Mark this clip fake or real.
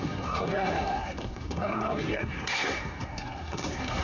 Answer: fake